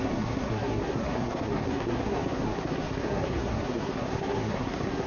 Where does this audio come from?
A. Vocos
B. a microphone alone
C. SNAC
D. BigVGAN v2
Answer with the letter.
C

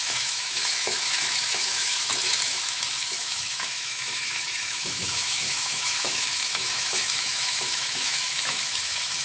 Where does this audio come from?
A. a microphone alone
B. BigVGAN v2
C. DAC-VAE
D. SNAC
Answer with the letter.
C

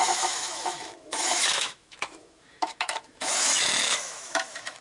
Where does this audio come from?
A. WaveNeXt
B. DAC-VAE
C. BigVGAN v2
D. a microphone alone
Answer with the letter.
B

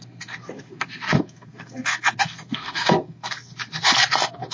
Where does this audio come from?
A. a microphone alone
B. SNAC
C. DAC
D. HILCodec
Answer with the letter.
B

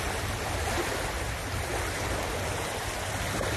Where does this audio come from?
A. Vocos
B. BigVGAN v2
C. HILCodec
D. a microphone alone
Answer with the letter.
D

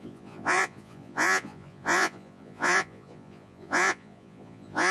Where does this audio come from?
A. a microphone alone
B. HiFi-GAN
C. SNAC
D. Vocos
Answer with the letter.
D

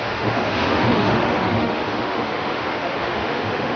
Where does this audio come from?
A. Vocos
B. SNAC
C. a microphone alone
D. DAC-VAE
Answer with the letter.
D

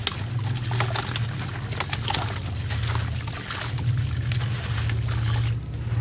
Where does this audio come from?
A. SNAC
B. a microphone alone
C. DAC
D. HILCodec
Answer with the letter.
B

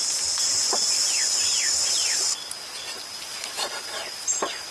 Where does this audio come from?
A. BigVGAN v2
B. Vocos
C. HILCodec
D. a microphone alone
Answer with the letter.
D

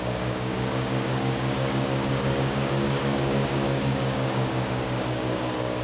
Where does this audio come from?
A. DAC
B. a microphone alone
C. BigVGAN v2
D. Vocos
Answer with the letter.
A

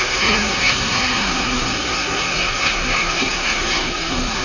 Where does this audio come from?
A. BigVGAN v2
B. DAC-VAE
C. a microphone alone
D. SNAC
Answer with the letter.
D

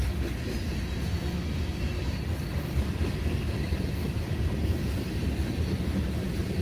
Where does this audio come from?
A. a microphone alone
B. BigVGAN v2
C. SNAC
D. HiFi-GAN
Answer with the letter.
A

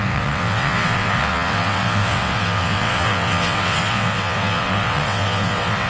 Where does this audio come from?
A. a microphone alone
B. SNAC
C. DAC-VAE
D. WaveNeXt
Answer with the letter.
D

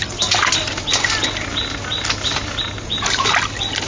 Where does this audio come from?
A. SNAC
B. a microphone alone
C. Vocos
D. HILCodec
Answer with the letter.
B